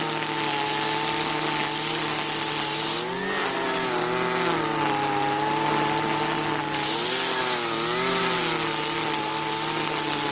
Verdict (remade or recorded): recorded